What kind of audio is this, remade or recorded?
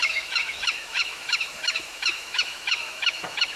remade